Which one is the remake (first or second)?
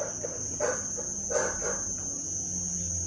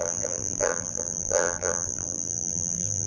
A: second